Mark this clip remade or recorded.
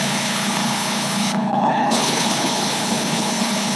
remade